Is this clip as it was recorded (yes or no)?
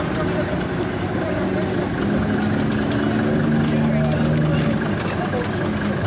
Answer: yes